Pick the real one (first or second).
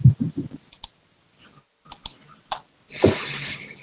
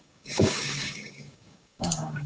first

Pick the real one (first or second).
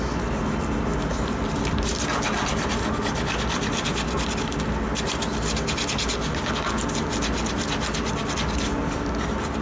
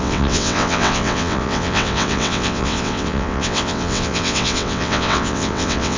first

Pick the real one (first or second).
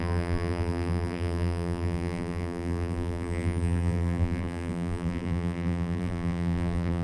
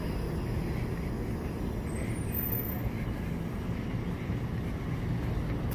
second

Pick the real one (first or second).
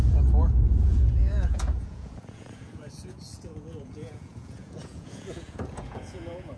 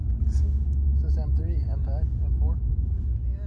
second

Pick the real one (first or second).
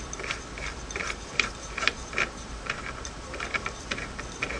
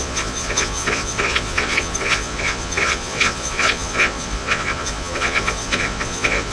first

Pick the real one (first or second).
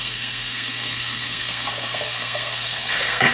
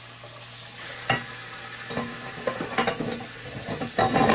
second